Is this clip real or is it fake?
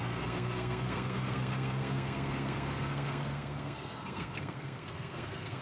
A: fake